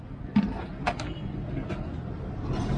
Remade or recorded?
recorded